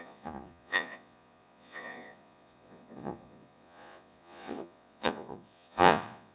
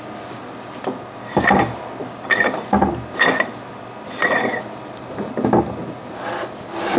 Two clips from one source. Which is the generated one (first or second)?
first